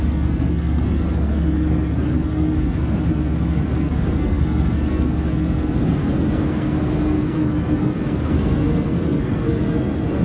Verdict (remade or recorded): remade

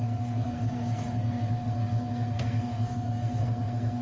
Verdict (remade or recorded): remade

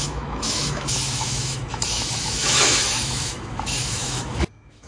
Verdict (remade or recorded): remade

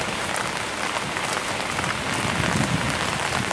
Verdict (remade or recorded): recorded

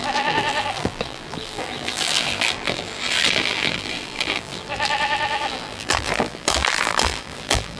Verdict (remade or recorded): remade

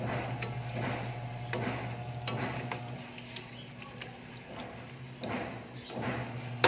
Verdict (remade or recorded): recorded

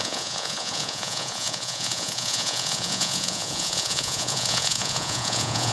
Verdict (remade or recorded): remade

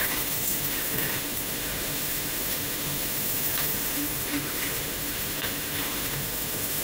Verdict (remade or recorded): remade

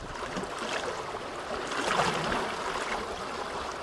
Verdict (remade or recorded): recorded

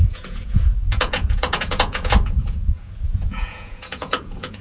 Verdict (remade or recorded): remade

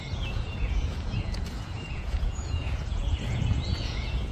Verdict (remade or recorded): remade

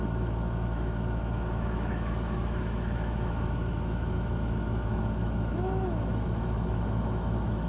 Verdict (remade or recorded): remade